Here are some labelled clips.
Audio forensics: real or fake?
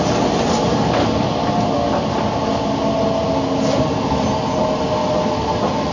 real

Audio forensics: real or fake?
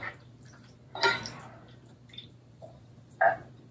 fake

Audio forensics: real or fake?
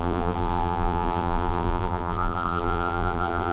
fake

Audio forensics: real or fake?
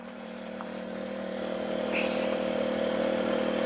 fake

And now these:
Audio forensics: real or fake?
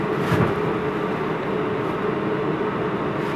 real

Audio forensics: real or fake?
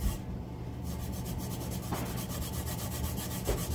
real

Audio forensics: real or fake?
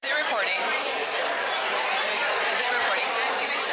fake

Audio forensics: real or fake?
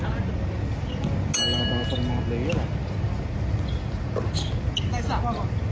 real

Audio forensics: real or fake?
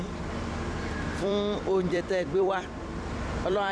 fake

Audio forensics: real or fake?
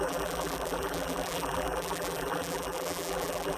fake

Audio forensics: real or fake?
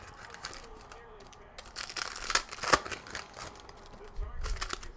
real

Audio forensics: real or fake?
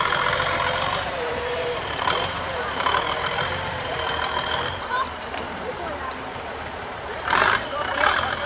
fake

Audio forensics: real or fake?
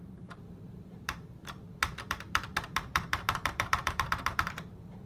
fake